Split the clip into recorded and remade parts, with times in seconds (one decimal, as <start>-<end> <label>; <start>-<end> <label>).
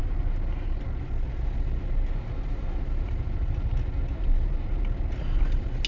0.0-5.9 recorded